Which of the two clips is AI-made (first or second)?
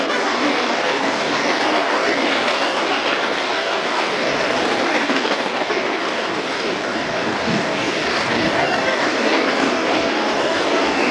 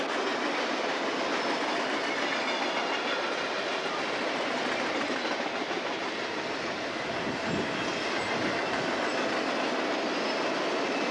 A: first